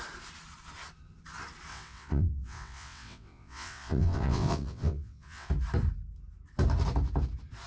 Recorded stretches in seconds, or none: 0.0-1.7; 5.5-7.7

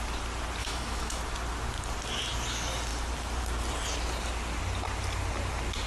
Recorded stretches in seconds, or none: 0.0-0.6; 1.2-5.9

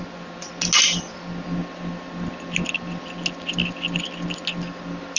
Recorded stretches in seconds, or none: 0.0-5.2

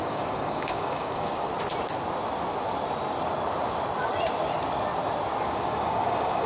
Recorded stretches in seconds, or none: 1.5-5.4

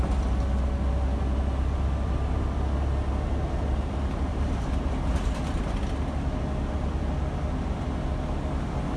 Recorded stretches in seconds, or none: 0.0-4.3; 5.0-9.0